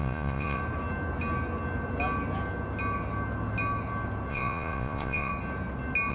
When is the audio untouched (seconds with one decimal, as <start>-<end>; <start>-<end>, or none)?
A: 0.6-4.3; 5.3-6.1